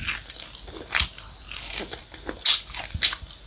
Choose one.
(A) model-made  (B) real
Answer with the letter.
B